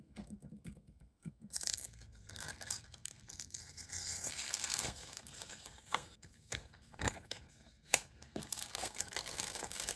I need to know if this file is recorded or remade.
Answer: remade